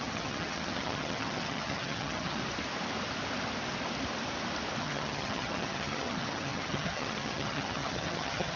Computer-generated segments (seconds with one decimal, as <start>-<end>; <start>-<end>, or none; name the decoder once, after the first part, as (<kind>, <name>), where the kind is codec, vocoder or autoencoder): 0.0-2.4 (vocoder, HiFi-GAN); 4.8-8.6